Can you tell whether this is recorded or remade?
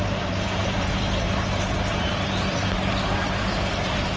remade